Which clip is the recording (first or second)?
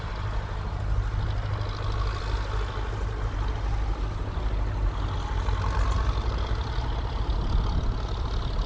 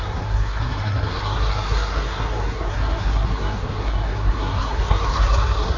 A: first